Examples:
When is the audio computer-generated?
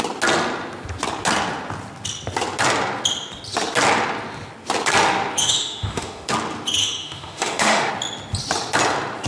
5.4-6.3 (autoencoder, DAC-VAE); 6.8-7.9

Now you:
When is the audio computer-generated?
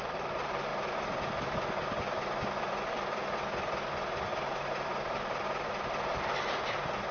0.0-0.7 (vocoder, BigVGAN v2); 2.6-3.2; 4.5-7.1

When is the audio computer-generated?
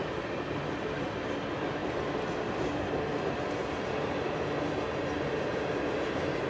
none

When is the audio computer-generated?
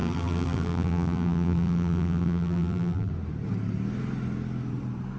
0.0-3.1 (vocoder, BigVGAN v2)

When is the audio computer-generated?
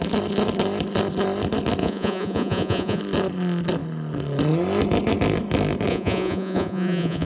1.8-3.0 (vocoder, Vocos); 5.9-7.3